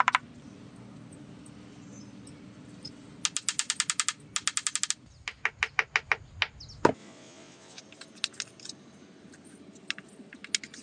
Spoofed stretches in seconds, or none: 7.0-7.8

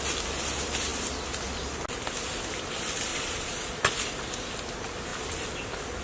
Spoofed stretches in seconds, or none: 3.1-3.9